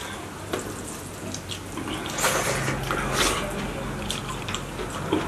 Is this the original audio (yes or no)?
yes